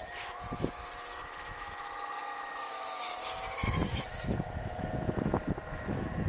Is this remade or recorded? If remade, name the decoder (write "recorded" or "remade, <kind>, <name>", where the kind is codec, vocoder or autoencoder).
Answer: remade, autoencoder, DAC-VAE